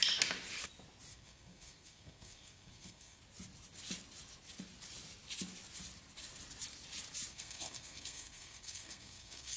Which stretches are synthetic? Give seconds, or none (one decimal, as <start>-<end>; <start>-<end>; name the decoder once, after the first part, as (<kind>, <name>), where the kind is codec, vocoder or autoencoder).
1.1-3.2 (codec, SNAC); 7.3-9.6